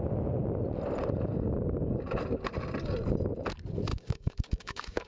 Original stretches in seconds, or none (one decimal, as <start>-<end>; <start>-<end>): 0.0-3.9

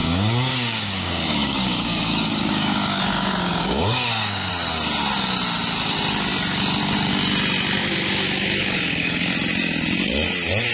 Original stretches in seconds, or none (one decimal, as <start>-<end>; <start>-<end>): 4.5-7.8; 9.3-10.7

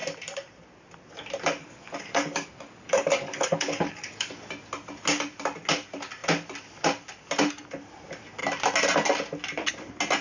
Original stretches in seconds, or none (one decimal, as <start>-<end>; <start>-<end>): 0.0-1.6; 4.3-10.2

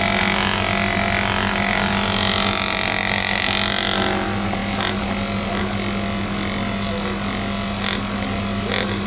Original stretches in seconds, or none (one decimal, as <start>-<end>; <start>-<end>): 0.0-9.1

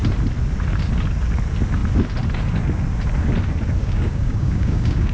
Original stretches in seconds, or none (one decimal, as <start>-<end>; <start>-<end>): 0.0-3.8